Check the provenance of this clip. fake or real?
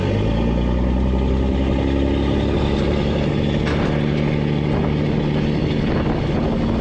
real